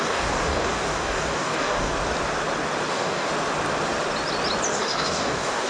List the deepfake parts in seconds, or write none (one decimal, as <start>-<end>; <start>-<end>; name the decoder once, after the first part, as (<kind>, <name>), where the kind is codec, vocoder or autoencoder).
0.0-1.9 (codec, DAC); 2.9-3.3; 4.7-5.7